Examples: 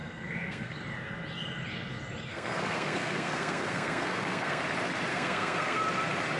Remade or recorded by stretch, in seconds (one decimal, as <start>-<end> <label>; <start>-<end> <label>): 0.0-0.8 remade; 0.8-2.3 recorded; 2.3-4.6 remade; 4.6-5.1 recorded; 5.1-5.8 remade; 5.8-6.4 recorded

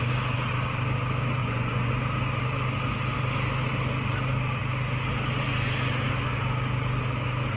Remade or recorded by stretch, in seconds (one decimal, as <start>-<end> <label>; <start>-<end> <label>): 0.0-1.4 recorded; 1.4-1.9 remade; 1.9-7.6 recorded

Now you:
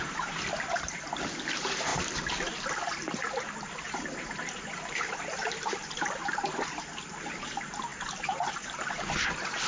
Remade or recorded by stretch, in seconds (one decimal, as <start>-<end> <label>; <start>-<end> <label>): 0.0-1.9 recorded; 1.9-6.8 remade; 6.8-9.7 recorded

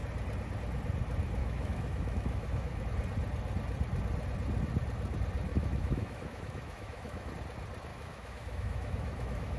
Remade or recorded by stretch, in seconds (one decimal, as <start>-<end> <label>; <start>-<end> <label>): 0.0-1.4 recorded; 1.4-2.8 remade; 2.8-5.5 recorded; 5.5-7.3 remade; 7.3-7.9 recorded; 7.9-9.6 remade

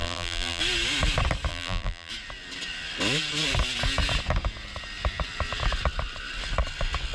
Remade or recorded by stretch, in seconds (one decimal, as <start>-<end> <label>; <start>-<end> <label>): 0.0-0.6 remade; 0.6-1.5 recorded; 1.5-2.1 remade; 2.1-7.1 recorded

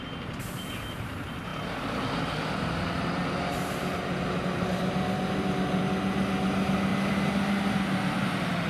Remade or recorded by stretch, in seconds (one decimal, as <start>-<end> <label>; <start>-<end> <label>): 0.0-8.7 recorded

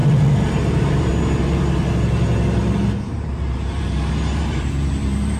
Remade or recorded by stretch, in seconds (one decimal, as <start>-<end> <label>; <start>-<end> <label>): 0.0-0.5 recorded; 0.5-1.1 remade; 1.1-3.1 recorded; 3.1-5.4 remade

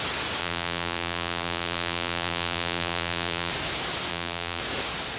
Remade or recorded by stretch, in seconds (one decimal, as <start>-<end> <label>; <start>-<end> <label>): 0.0-0.4 recorded; 0.4-3.5 remade; 3.5-4.1 recorded; 4.1-4.6 remade; 4.6-5.2 recorded